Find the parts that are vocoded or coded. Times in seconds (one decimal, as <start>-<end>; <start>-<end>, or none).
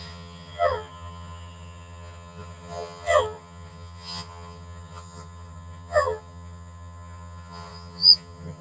0.0-8.6